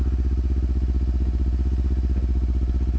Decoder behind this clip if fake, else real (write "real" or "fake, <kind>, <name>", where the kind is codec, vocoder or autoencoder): real